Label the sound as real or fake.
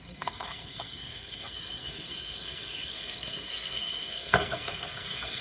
fake